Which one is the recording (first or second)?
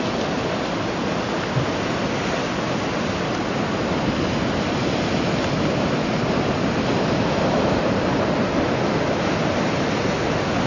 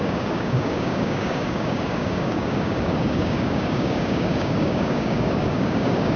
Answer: first